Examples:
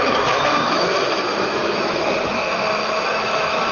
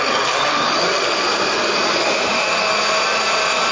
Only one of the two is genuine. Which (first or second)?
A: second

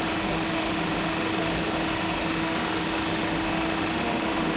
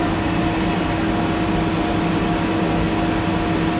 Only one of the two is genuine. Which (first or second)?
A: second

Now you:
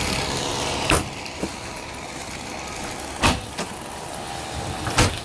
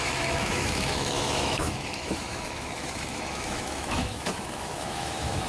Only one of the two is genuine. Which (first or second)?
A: first